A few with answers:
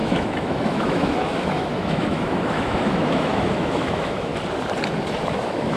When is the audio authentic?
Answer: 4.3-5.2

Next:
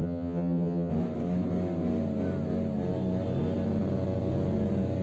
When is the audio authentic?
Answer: 0.9-5.0

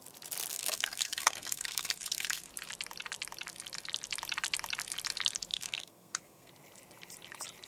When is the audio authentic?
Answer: 0.0-0.5; 2.5-5.5; 6.5-7.7